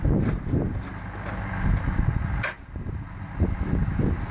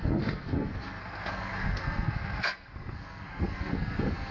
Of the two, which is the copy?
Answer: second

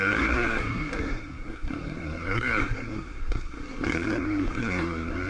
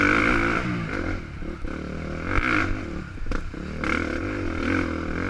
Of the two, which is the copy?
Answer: first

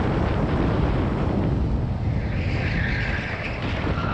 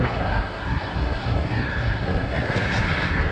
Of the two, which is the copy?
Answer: second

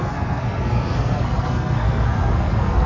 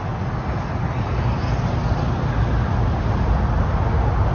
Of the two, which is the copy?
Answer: first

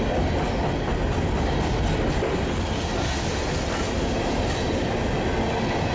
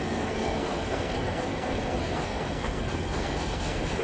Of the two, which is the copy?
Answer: second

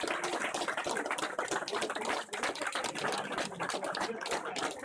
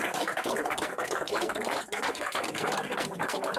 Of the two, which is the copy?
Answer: second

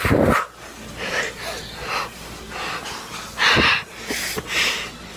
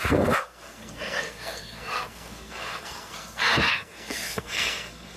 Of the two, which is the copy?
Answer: second